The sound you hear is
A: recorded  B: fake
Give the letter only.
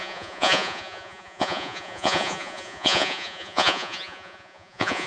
B